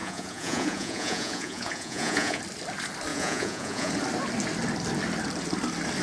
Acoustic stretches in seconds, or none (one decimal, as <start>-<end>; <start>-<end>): 2.4-3.1; 3.9-6.0